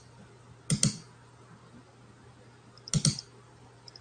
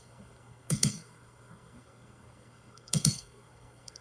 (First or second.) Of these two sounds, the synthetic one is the second